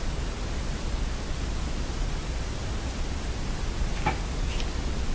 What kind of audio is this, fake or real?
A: real